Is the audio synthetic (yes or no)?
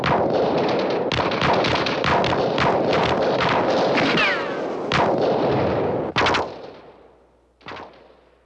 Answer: no